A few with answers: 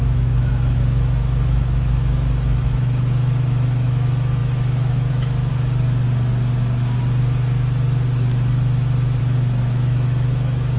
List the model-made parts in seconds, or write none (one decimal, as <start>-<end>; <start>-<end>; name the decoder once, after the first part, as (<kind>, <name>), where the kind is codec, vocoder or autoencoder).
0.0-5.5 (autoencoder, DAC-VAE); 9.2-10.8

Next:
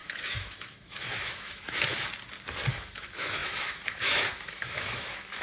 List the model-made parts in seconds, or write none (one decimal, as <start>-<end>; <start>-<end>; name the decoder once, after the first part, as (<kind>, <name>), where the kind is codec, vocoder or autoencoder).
0.0-1.9 (autoencoder, DAC-VAE); 2.7-5.4

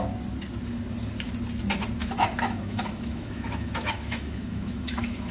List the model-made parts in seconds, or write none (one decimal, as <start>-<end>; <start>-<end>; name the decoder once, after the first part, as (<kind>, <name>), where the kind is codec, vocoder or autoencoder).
2.0-5.3 (autoencoder, DAC-VAE)

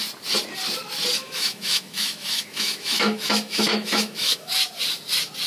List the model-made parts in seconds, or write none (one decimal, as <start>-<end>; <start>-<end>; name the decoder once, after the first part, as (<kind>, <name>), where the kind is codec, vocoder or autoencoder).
1.2-4.5 (autoencoder, DAC-VAE)

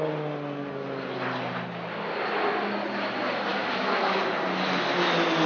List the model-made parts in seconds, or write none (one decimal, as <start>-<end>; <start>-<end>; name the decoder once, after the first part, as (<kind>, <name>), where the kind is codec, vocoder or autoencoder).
3.5-4.2 (autoencoder, DAC-VAE)

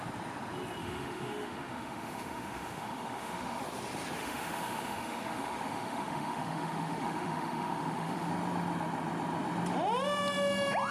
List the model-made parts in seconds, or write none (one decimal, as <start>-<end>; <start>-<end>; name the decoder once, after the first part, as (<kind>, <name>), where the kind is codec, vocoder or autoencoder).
0.8-3.6 (autoencoder, DAC-VAE); 4.2-8.3

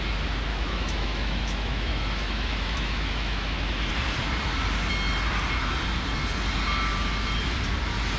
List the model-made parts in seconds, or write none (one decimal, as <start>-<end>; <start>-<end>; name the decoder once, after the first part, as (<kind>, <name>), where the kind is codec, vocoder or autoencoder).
0.5-3.9 (autoencoder, DAC-VAE)

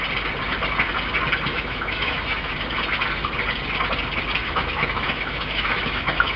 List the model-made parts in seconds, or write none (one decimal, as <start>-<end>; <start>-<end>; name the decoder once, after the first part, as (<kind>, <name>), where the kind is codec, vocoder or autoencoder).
1.5-2.5 (autoencoder, DAC-VAE); 4.4-6.4